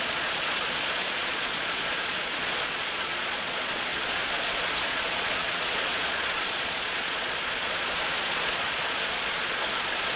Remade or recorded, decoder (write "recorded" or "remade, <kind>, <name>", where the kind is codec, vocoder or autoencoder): remade, vocoder, Vocos